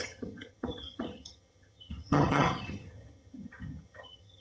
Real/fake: fake